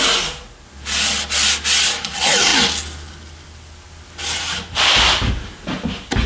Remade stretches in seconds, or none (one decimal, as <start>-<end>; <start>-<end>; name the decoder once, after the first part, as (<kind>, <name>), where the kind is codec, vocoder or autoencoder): none

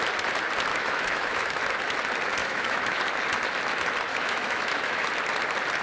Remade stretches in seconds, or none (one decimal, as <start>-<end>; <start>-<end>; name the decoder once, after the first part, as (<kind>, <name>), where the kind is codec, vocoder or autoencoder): 0.7-1.6 (autoencoder, DAC-VAE); 2.4-3.0; 4.1-5.1

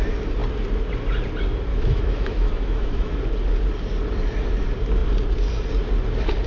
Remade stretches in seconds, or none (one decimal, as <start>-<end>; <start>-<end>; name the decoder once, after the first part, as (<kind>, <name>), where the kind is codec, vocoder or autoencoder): 1.7-3.2 (autoencoder, DAC-VAE)

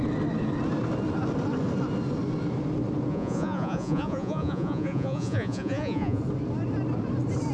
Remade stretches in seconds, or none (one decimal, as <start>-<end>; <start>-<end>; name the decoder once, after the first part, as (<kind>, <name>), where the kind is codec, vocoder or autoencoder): 3.1-6.2 (vocoder, Vocos)

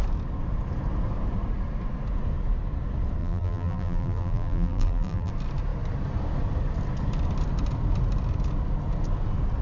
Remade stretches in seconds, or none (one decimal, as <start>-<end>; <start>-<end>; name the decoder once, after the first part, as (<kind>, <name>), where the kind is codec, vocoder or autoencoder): 3.2-5.3 (vocoder, BigVGAN v2)